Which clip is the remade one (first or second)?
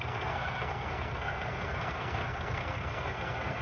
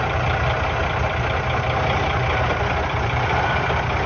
first